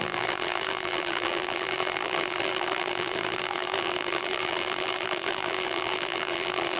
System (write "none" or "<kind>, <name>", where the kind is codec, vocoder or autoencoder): vocoder, BigVGAN v2